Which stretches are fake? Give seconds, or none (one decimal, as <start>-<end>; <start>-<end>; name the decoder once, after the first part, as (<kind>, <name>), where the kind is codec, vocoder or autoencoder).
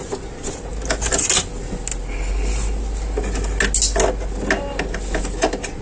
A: none